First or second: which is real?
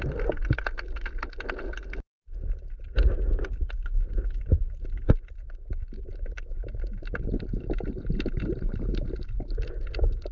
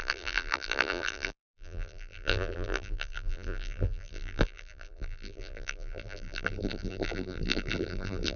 first